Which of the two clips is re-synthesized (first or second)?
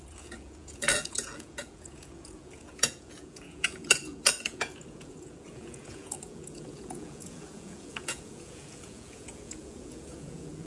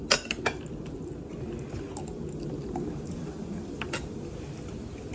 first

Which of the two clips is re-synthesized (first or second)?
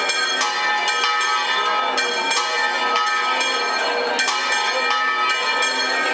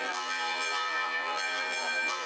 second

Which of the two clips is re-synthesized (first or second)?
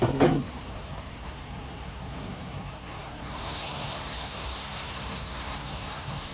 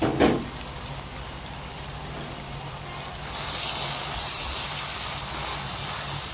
first